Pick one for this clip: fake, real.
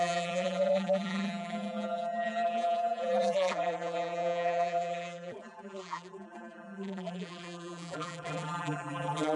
fake